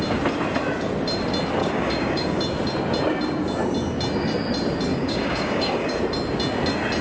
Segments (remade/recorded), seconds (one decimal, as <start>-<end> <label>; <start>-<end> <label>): 0.0-1.6 recorded; 1.6-2.4 remade; 2.4-4.9 recorded; 4.9-6.0 remade; 6.0-7.0 recorded